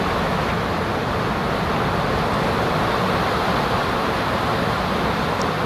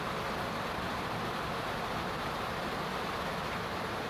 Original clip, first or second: first